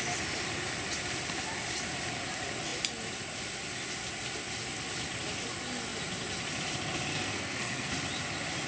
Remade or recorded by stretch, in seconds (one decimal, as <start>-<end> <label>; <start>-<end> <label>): 0.0-7.1 recorded; 7.1-7.9 remade; 7.9-8.7 recorded